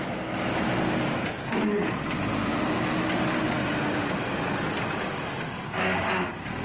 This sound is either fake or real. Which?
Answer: real